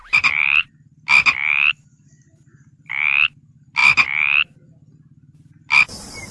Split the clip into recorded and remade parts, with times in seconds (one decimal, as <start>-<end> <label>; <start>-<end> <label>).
0.0-0.7 remade; 0.7-6.3 recorded